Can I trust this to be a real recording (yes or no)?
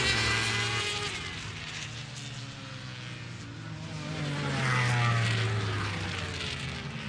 yes